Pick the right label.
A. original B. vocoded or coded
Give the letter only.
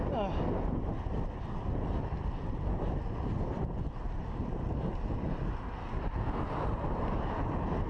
A